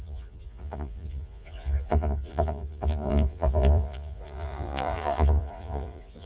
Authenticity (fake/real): fake